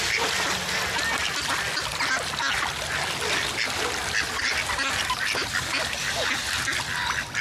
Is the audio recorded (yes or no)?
yes